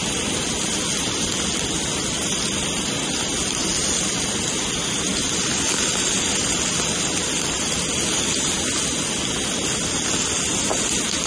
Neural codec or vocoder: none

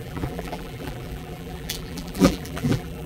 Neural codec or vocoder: vocoder, BigVGAN v2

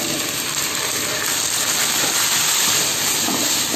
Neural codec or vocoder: vocoder, BigVGAN v2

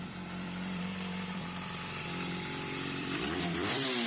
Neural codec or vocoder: vocoder, BigVGAN v2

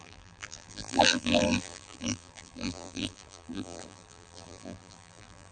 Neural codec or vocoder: vocoder, BigVGAN v2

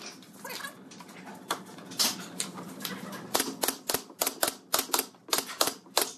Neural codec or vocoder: none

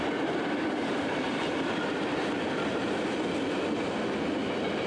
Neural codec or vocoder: vocoder, BigVGAN v2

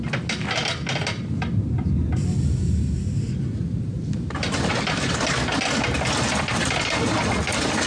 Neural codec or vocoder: none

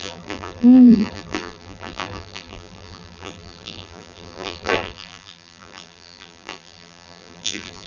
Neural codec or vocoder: vocoder, BigVGAN v2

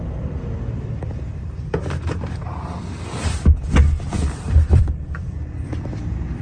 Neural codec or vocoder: vocoder, BigVGAN v2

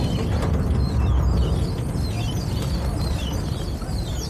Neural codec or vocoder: none